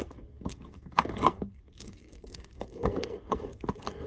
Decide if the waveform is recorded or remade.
remade